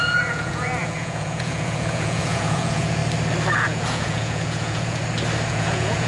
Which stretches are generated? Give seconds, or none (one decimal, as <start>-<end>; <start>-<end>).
0.0-3.0; 3.5-5.0; 5.5-6.1